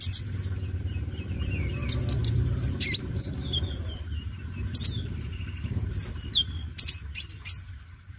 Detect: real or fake real